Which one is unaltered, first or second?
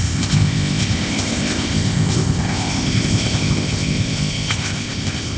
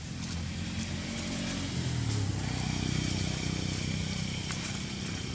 second